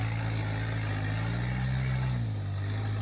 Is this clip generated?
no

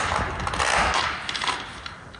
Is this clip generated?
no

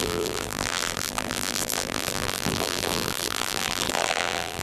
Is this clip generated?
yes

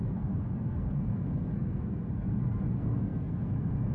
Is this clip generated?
yes